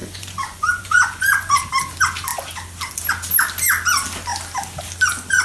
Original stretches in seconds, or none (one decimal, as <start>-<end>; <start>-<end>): 1.7-5.4